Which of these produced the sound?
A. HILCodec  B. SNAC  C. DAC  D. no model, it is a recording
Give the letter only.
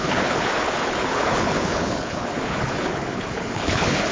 A